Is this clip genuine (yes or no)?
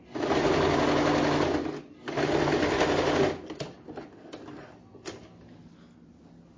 yes